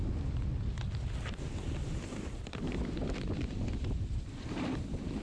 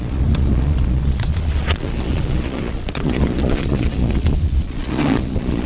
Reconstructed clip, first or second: second